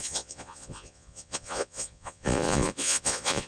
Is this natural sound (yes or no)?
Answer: no